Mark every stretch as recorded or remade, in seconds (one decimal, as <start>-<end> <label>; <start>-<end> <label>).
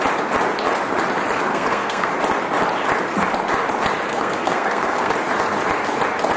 0.0-1.5 recorded; 1.5-2.1 remade; 2.1-4.1 recorded; 4.1-5.1 remade; 5.1-6.4 recorded